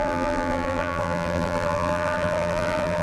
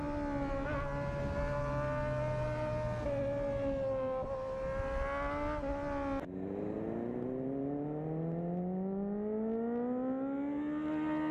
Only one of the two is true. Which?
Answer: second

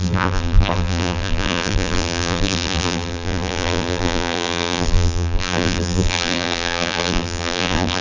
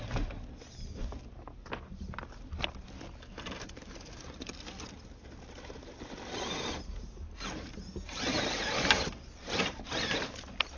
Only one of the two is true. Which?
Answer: second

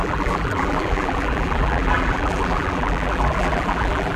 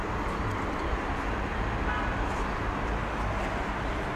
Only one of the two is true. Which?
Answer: second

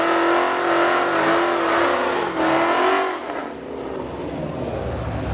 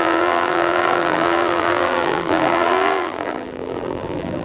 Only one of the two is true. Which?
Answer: first